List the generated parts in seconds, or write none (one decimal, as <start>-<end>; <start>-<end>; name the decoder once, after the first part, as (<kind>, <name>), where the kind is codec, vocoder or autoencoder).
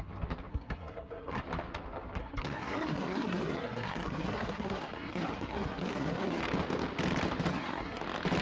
0.5-1.4 (codec, SNAC); 2.2-6.4; 7.5-8.0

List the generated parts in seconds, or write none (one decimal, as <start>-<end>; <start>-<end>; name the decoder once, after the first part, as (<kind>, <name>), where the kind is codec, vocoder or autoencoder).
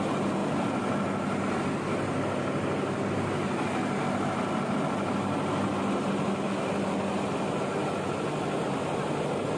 none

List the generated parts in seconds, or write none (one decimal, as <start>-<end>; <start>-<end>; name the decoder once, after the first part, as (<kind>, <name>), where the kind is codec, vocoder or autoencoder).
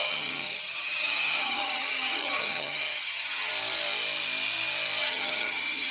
0.0-3.5 (vocoder, HiFi-GAN); 5.0-5.9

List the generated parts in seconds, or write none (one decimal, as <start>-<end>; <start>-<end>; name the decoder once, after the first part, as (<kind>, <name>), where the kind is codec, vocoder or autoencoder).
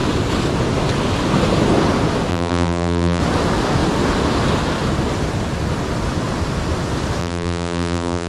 2.3-3.2 (vocoder, BigVGAN v2); 7.2-8.3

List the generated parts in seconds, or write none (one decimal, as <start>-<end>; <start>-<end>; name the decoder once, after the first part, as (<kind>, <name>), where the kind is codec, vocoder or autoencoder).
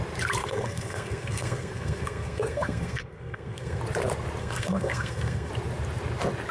0.4-3.8 (codec, SNAC); 4.4-5.5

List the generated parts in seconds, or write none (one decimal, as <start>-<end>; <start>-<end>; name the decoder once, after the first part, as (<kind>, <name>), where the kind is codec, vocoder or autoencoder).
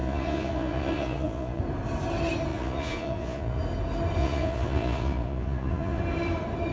0.0-1.6 (vocoder, Vocos); 2.5-3.6; 4.2-6.0